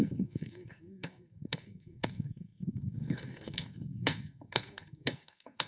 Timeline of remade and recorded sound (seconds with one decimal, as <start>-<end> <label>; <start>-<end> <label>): 0.0-5.7 remade